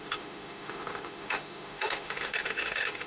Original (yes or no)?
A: no